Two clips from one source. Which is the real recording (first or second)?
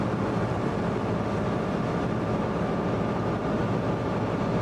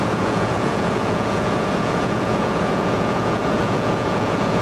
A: first